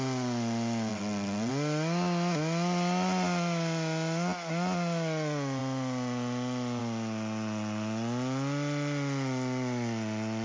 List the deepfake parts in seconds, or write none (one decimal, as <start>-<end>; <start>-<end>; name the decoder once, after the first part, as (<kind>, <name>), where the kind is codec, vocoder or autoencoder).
0.9-1.5 (vocoder, WaveNeXt)